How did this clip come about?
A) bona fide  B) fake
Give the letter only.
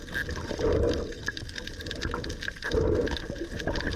A